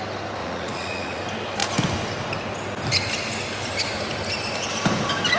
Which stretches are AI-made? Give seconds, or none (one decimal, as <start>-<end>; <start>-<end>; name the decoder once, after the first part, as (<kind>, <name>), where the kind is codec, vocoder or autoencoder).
0.4-1.2 (vocoder, Vocos)